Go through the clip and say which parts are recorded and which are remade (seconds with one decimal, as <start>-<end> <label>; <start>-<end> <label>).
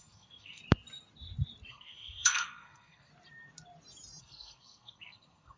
0.0-0.6 remade; 0.6-1.7 recorded; 1.7-3.1 remade; 3.1-4.2 recorded; 4.2-5.6 remade